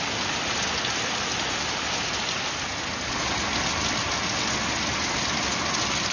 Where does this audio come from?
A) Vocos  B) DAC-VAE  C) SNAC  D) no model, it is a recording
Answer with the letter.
D